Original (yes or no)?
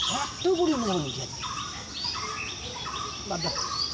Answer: yes